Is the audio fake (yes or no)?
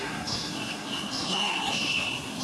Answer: yes